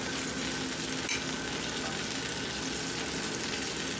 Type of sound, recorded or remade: recorded